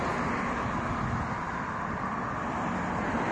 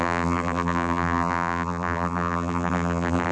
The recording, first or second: first